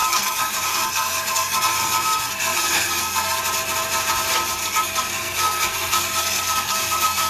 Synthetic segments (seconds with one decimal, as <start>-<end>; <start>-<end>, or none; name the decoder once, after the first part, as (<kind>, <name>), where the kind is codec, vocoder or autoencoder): 0.0-3.4 (codec, SNAC); 4.6-7.3